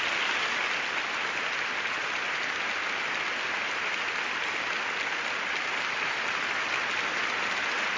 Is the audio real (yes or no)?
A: yes